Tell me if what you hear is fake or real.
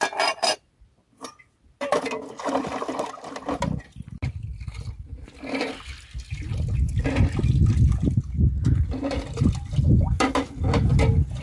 real